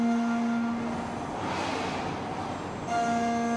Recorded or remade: recorded